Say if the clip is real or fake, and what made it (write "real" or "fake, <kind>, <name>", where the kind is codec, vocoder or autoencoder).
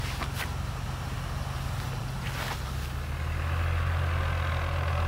real